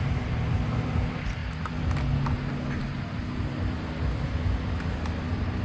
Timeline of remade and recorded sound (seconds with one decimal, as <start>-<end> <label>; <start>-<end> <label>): 0.0-5.6 recorded